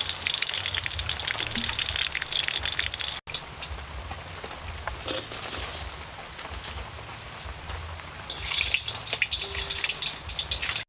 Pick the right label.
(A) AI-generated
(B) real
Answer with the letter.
B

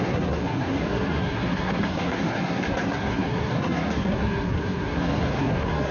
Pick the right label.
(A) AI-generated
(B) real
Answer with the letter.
A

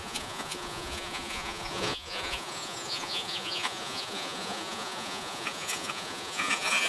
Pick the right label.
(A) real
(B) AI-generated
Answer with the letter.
B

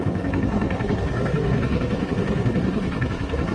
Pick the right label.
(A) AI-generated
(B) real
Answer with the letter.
A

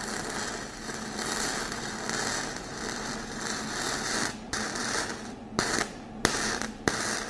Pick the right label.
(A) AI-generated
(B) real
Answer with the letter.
B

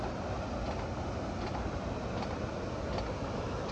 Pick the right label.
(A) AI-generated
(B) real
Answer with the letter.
B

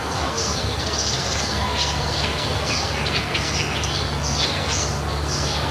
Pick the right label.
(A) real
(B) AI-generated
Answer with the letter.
B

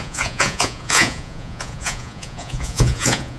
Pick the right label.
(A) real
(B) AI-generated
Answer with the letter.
B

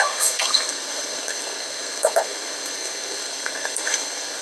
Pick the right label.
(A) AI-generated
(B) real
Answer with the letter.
A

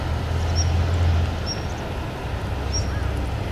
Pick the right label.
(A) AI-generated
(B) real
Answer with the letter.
B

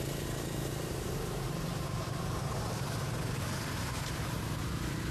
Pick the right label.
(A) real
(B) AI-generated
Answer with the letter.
B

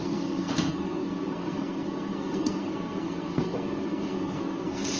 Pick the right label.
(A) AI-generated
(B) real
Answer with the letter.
A